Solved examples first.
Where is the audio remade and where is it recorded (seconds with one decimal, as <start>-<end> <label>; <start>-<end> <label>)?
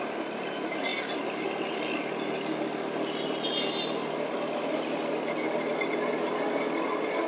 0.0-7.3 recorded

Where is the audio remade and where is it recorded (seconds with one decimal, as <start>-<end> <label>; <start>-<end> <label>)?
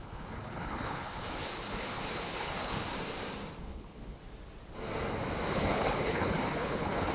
0.0-2.9 remade; 2.9-3.6 recorded; 3.6-4.2 remade; 4.2-5.5 recorded; 5.5-7.1 remade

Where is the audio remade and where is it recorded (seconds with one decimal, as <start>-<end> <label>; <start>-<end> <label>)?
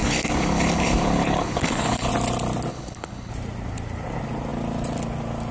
0.0-2.1 remade; 2.1-2.7 recorded; 2.7-3.3 remade; 3.3-5.5 recorded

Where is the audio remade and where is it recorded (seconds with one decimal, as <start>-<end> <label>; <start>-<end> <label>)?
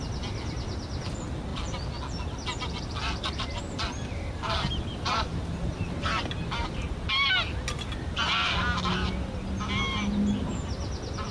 0.0-11.3 recorded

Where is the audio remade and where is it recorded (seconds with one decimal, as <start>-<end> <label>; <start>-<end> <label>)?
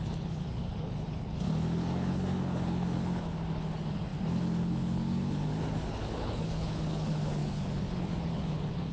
0.0-8.9 remade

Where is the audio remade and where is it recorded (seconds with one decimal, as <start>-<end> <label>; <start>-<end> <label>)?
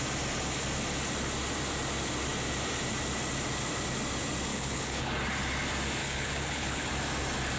0.0-4.5 recorded; 4.5-5.1 remade; 5.1-6.0 recorded; 6.0-6.9 remade; 6.9-7.6 recorded